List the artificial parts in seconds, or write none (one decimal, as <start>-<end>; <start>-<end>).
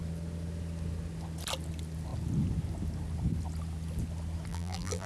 4.5-5.1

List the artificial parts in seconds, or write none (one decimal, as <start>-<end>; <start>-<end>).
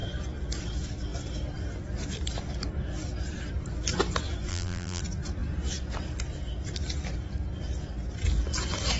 4.5-5.0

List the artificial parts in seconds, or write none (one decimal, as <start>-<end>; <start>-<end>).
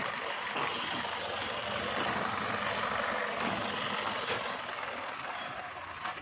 0.0-1.6; 5.3-6.2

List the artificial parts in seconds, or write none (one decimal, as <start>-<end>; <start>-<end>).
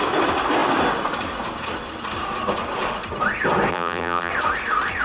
3.7-4.3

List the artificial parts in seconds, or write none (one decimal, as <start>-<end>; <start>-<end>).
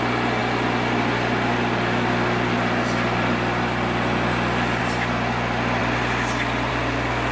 none